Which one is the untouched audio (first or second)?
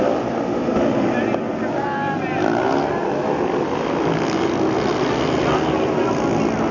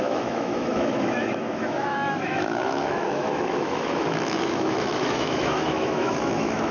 first